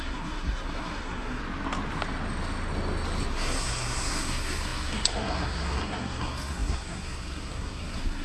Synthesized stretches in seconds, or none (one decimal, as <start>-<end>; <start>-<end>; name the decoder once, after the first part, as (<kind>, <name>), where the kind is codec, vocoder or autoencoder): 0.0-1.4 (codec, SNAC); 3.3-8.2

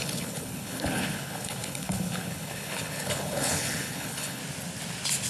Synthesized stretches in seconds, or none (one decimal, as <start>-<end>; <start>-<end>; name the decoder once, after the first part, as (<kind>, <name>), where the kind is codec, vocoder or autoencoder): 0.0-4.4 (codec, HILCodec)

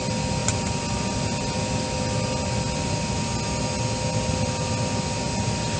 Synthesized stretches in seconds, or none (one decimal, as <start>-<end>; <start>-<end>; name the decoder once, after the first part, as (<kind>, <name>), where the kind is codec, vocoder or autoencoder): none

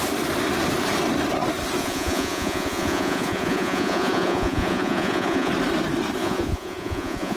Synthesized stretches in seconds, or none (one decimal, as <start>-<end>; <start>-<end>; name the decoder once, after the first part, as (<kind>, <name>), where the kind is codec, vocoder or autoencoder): 1.8-5.5 (vocoder, Vocos); 6.2-7.4

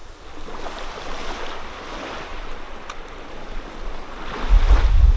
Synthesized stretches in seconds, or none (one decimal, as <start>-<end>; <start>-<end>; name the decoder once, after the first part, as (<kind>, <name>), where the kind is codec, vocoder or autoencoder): none

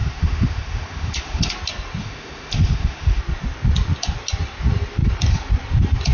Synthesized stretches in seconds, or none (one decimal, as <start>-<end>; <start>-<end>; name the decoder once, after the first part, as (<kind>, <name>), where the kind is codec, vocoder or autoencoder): 0.0-1.5 (autoencoder, DAC-VAE); 2.0-3.2